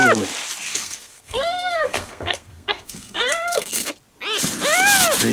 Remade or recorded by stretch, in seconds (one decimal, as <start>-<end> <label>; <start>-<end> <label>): 0.0-0.7 recorded; 0.7-3.9 remade; 3.9-5.3 recorded